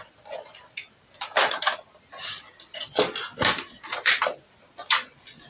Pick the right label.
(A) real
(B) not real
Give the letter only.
B